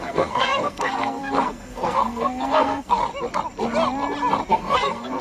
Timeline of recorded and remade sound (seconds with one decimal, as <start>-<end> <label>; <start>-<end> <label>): 0.0-3.0 remade; 3.0-4.5 recorded; 4.5-5.2 remade

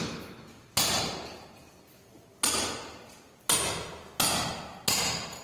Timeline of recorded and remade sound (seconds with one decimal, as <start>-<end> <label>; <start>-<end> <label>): 0.0-5.4 recorded

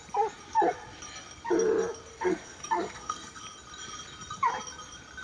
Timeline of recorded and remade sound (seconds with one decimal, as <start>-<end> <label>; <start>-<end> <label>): 0.0-2.1 recorded; 2.1-3.4 remade; 3.4-5.2 recorded

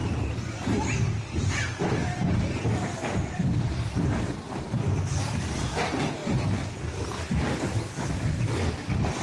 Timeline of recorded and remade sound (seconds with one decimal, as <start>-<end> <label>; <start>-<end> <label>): 0.0-5.1 remade; 5.1-9.2 recorded